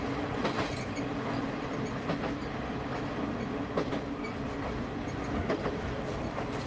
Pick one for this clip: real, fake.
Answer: real